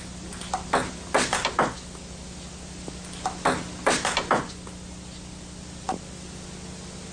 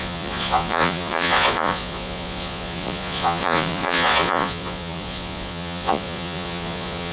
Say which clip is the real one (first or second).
first